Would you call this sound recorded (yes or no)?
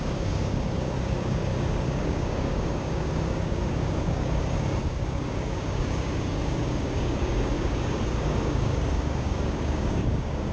no